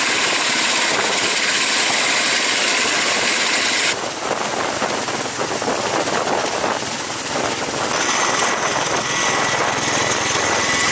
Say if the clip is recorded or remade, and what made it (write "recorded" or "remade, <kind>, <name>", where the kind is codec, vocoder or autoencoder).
recorded